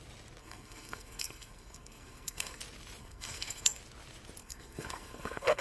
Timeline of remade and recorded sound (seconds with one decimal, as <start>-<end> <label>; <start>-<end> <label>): 0.0-0.4 recorded; 0.4-2.6 remade; 2.6-3.0 recorded; 3.0-3.8 remade; 3.8-4.4 recorded; 4.4-5.6 remade